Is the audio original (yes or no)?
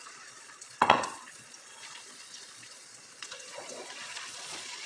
no